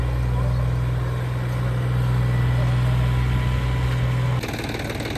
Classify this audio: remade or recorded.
recorded